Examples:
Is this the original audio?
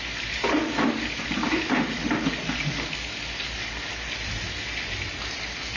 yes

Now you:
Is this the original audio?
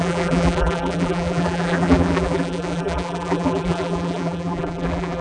no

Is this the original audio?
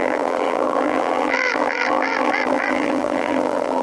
no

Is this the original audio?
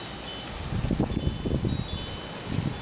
yes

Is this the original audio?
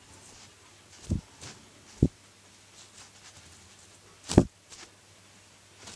yes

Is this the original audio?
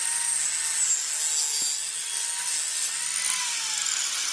yes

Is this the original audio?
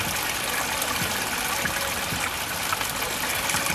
yes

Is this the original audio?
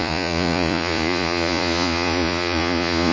no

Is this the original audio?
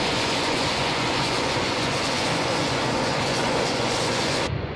no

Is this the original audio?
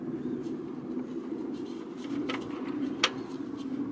yes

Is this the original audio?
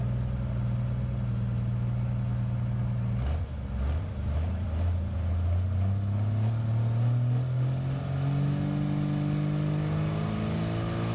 yes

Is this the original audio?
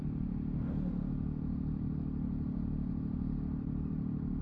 yes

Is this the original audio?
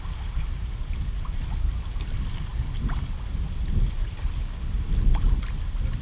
yes